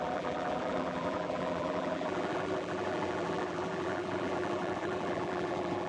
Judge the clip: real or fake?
fake